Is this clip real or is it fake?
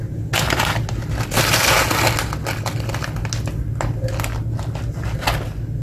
real